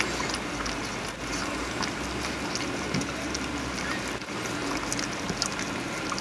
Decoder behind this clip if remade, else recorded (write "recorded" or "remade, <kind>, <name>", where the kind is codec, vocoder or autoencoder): recorded